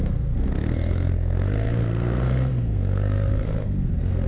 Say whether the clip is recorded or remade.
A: remade